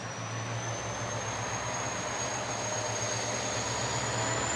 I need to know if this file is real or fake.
real